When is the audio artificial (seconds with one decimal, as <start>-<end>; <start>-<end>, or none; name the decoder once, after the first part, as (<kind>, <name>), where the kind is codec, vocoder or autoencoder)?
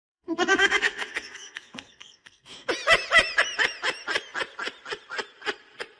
0.0-2.7 (codec, SNAC)